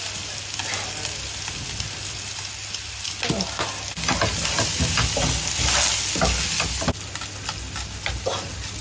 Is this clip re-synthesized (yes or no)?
no